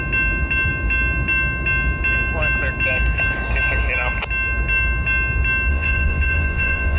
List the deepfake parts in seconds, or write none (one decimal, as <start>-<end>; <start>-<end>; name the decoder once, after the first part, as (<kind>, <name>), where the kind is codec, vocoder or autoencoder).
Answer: 5.7-7.0 (vocoder, Vocos)